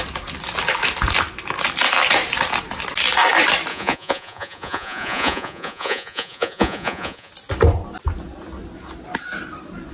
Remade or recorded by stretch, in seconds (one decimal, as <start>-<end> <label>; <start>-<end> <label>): 0.0-3.7 recorded; 3.7-7.3 remade; 7.3-9.9 recorded